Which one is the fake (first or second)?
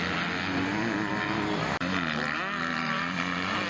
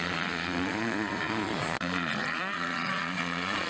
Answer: second